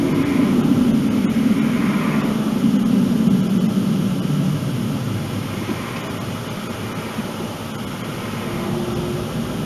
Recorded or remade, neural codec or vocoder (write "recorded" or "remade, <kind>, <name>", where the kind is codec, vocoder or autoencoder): recorded